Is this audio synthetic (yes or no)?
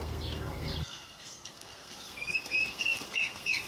yes